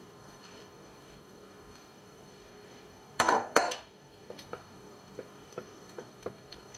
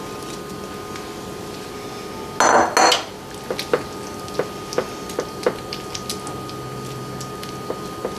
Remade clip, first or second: first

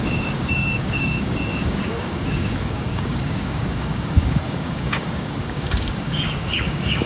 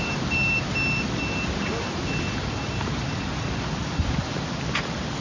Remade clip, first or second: first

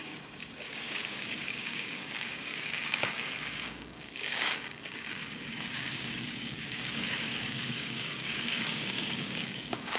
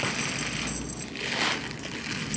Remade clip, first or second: first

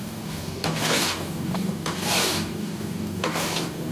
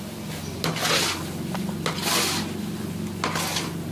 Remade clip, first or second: first